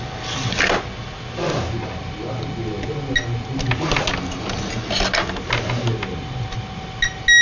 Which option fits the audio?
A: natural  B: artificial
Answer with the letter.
A